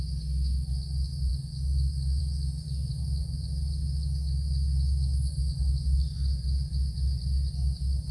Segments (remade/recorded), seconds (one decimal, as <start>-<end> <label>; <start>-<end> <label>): 0.0-8.1 recorded